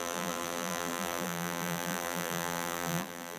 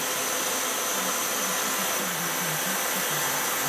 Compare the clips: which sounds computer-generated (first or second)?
first